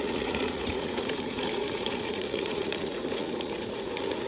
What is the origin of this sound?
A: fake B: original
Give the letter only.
A